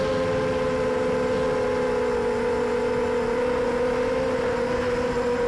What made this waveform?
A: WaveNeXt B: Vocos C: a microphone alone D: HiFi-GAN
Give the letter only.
C